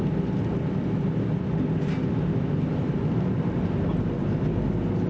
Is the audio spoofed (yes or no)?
no